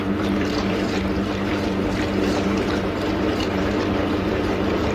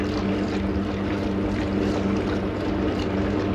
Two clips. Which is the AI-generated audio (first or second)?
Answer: first